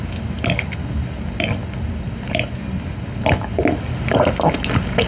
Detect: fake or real real